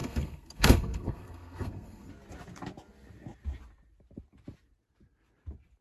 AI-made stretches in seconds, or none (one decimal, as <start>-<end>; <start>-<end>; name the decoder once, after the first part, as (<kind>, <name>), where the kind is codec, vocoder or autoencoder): 0.0-2.1 (codec, SNAC)